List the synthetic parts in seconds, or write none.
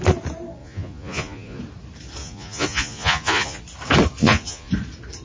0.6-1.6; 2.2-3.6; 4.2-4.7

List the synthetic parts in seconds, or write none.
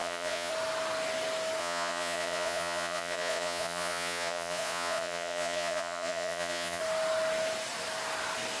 0.0-0.5; 1.6-6.8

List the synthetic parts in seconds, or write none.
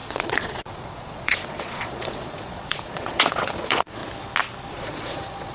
0.0-4.0; 4.7-5.5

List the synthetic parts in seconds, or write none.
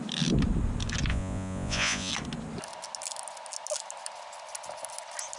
1.1-2.1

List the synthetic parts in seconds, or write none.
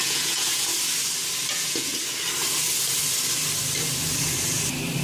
0.0-0.7; 1.5-1.9